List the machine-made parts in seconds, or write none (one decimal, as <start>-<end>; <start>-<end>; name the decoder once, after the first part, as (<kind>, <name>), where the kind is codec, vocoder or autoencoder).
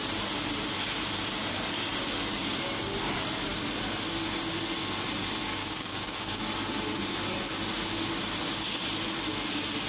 5.5-6.4 (codec, DAC)